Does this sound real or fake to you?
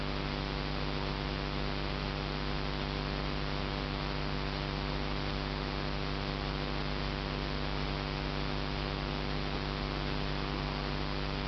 real